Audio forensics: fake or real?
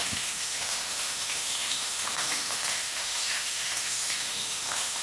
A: fake